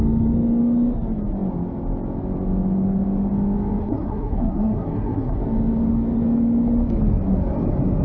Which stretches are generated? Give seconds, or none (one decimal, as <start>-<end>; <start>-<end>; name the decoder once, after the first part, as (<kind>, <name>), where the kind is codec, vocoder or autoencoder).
3.8-5.4 (codec, SNAC)